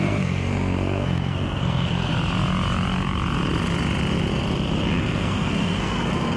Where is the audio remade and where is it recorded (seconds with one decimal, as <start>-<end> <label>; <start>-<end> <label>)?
0.0-2.1 remade; 2.1-5.0 recorded; 5.0-6.4 remade